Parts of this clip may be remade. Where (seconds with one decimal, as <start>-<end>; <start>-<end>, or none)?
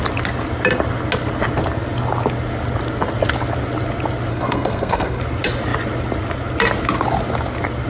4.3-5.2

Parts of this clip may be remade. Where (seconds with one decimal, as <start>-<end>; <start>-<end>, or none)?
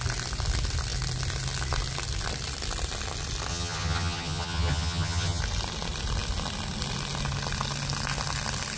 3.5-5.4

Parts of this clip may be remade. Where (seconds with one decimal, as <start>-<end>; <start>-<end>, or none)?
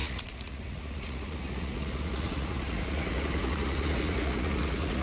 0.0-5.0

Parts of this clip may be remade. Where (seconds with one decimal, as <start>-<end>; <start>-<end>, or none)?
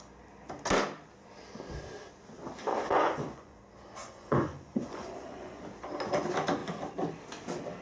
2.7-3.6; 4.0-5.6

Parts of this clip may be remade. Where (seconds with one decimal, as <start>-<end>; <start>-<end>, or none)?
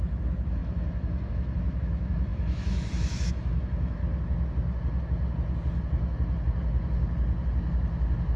0.0-4.0